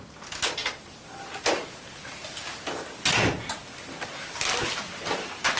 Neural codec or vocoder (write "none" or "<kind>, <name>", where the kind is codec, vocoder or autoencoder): none